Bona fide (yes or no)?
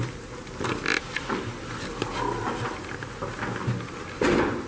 yes